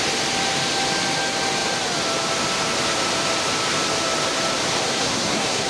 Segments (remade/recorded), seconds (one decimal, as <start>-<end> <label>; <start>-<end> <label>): 0.0-4.8 recorded; 4.8-5.7 remade